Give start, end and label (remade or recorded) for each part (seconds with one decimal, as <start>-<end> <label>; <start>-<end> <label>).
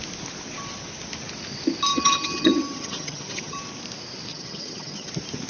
0.0-1.9 recorded; 1.9-3.6 remade; 3.6-4.3 recorded; 4.3-5.1 remade; 5.1-5.5 recorded